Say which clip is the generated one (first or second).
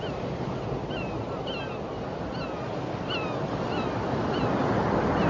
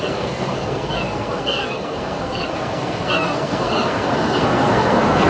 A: second